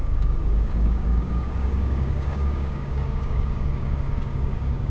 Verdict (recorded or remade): remade